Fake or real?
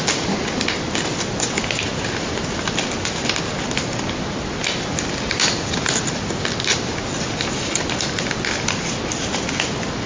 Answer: real